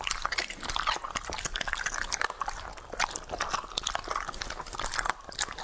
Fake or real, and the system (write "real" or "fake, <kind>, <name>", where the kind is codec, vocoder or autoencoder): real